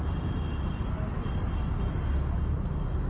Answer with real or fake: real